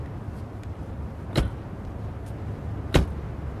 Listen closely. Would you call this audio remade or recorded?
recorded